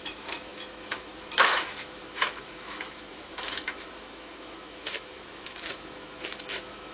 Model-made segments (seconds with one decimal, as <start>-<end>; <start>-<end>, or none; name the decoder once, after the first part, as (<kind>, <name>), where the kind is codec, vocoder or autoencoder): 0.0-6.9 (autoencoder, DAC-VAE)